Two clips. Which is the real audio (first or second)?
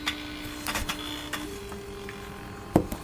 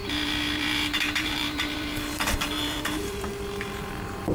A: first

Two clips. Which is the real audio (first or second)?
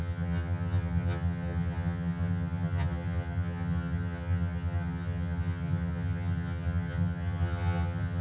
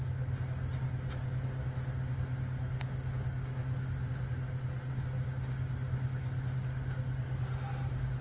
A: second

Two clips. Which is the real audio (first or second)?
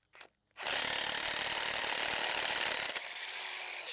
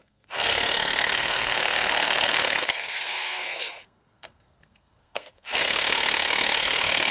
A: first